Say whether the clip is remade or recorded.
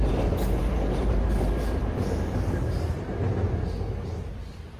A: recorded